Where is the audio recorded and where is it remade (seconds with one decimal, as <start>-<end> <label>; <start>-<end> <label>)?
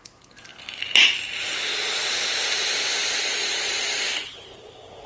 0.0-5.1 recorded